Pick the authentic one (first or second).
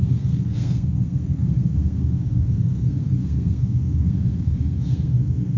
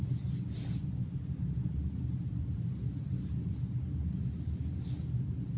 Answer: second